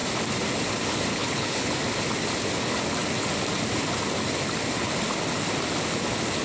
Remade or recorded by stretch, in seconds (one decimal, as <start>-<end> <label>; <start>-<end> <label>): 0.0-1.1 recorded; 1.1-1.8 remade; 1.8-6.4 recorded